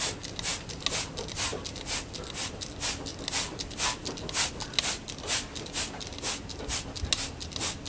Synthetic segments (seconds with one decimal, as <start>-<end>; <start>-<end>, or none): none